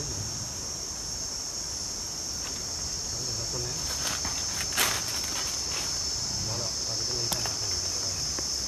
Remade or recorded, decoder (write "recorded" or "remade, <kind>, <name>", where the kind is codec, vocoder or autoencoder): recorded